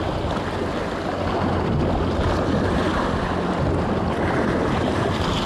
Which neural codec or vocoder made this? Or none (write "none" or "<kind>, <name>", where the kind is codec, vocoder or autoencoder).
none